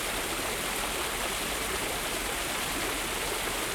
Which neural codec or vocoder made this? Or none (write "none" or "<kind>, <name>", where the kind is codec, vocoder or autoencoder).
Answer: none